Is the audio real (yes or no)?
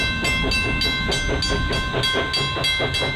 yes